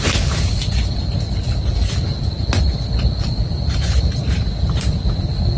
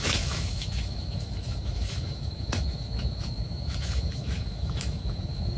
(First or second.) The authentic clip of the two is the first